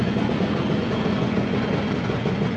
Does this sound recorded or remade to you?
remade